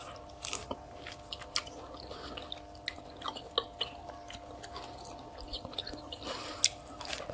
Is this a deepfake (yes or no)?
no